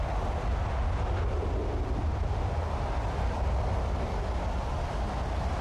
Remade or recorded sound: recorded